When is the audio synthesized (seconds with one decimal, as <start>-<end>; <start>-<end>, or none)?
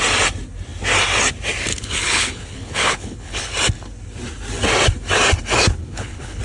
1.7-3.4; 5.8-6.4